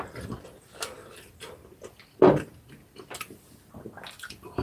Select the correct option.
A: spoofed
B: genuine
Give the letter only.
B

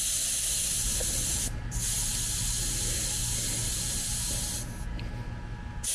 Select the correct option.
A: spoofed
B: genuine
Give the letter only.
B